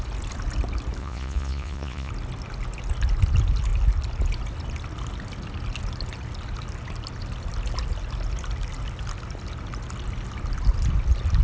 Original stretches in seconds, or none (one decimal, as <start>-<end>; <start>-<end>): 0.0-1.0; 2.1-11.4